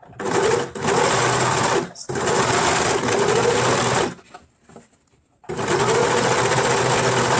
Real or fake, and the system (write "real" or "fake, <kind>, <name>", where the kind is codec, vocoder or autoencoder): real